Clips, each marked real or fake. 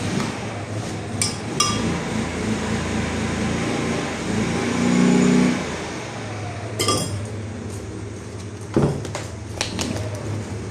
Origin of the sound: real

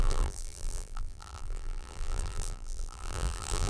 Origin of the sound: fake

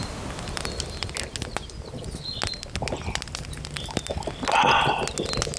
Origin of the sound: real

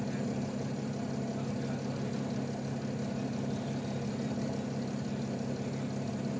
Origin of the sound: real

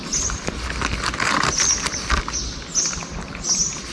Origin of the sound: real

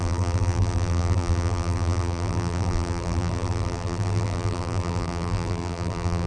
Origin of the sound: fake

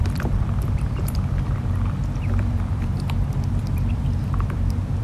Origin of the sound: fake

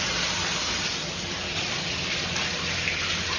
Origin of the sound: real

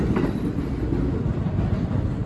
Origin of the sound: fake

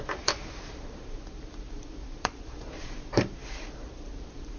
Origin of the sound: fake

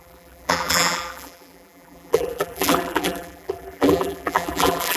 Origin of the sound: fake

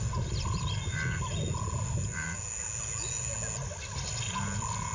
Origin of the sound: real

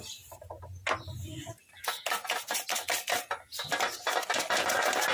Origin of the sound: real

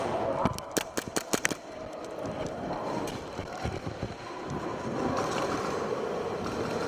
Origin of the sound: real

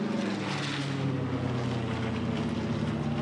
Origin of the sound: real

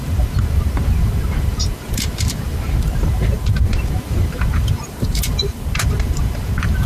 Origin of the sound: fake